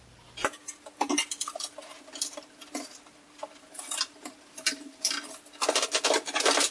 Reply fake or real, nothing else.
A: real